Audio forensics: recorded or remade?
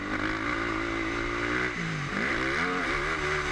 recorded